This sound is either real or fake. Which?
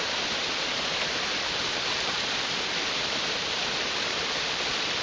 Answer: fake